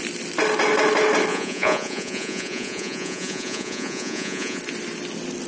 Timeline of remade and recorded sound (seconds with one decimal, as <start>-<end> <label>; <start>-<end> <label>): 0.0-1.3 recorded; 1.3-4.6 remade; 4.6-5.5 recorded

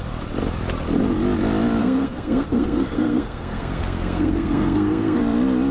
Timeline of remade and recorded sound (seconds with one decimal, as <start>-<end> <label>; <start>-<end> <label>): 0.0-1.8 recorded; 1.8-5.2 remade; 5.2-5.7 recorded